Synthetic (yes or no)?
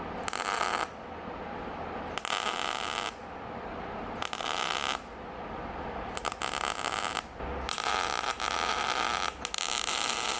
no